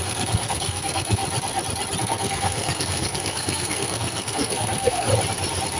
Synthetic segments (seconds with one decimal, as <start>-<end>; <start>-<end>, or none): 0.0-1.2; 2.0-5.1